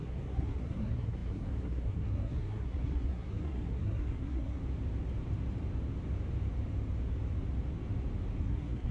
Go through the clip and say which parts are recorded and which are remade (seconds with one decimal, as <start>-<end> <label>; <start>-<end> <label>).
0.0-4.6 remade; 4.6-8.4 recorded; 8.4-8.9 remade

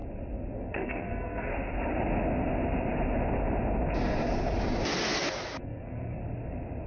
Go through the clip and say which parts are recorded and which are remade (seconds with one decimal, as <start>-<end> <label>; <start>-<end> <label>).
0.0-0.5 recorded; 0.5-1.5 remade; 1.5-5.6 recorded; 5.6-6.2 remade; 6.2-6.9 recorded

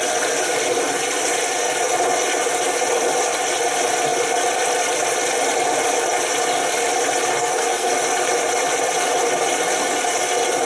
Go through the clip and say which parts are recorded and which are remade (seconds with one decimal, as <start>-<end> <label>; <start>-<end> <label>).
0.0-7.4 recorded; 7.4-7.9 remade; 7.9-10.7 recorded